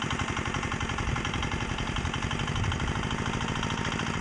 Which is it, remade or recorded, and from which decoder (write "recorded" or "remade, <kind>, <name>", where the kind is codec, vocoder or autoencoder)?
recorded